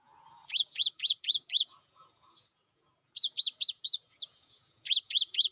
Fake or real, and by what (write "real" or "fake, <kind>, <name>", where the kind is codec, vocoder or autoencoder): fake, vocoder, Vocos